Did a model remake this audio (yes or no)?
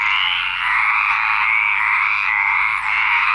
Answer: no